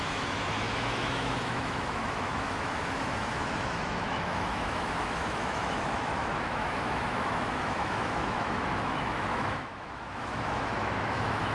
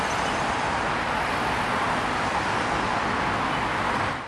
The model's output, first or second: first